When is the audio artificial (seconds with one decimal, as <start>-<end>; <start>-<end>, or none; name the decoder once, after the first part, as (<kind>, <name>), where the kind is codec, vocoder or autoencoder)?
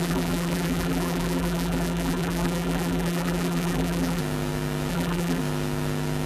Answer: 0.0-4.2 (vocoder, BigVGAN v2); 4.9-5.4